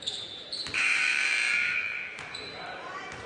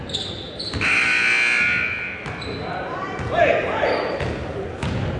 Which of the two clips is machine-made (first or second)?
first